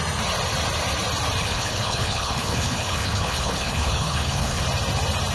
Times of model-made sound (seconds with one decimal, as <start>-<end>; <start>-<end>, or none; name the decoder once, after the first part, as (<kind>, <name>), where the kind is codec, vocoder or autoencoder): 1.4-4.6 (codec, HILCodec)